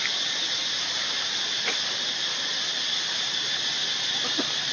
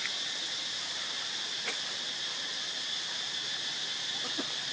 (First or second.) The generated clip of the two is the first